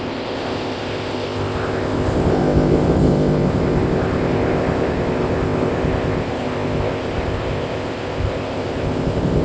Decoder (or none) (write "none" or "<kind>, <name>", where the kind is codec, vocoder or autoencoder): codec, ZipCodec